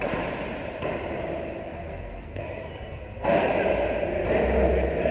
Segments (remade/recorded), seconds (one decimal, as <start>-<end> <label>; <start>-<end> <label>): 0.0-1.6 recorded; 1.6-3.5 remade; 3.5-5.1 recorded